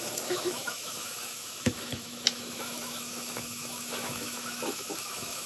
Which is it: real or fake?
fake